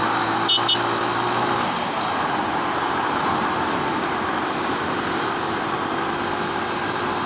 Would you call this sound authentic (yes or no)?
no